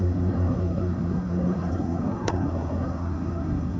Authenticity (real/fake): fake